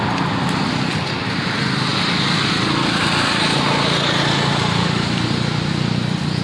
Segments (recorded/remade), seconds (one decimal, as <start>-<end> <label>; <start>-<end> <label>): 0.0-1.9 recorded; 1.9-5.7 remade; 5.7-6.4 recorded